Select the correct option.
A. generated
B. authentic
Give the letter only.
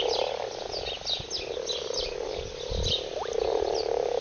B